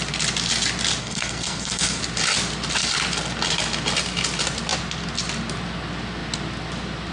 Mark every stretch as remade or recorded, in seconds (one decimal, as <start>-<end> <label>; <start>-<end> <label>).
0.0-1.0 recorded; 1.0-2.0 remade; 2.0-7.1 recorded